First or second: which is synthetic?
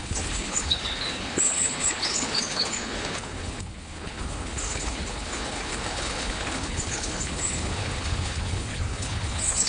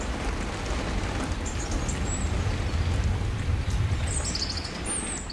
first